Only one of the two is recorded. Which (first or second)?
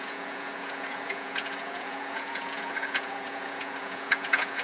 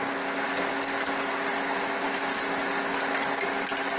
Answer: second